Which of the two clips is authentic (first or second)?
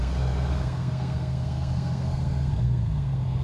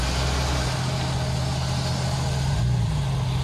second